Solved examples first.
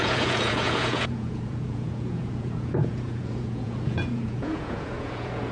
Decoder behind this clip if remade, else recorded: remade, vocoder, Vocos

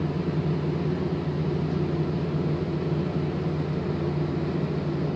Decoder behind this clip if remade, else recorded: recorded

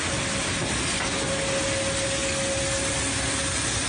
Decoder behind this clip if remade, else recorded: recorded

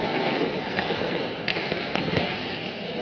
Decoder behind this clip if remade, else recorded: remade, codec, SNAC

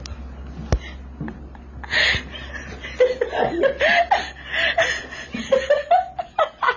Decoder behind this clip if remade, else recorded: recorded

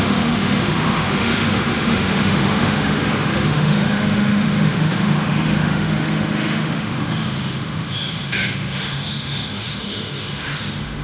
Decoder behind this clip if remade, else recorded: remade, autoencoder, DAC-VAE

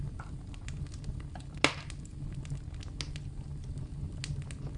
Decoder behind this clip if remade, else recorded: recorded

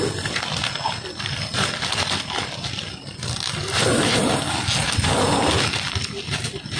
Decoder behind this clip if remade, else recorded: recorded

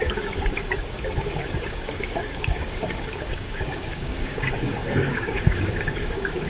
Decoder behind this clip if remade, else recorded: remade, codec, DAC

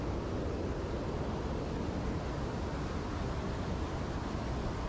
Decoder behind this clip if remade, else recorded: recorded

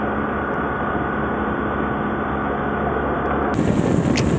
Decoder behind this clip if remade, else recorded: recorded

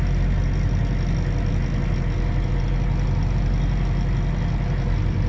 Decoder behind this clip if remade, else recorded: recorded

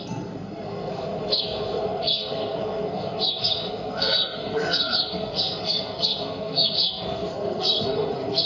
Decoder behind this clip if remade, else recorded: remade, codec, SNAC